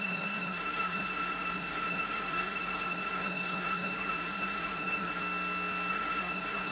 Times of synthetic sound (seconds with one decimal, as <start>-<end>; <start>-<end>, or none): 0.0-5.2; 5.9-6.7